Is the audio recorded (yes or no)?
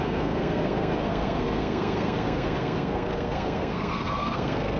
no